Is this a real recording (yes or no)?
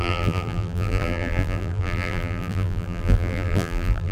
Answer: no